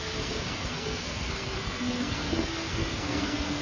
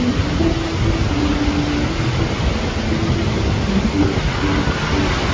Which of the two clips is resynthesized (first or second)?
first